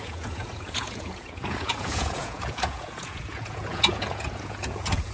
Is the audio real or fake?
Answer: fake